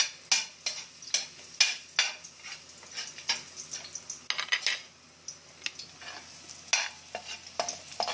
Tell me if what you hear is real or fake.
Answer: real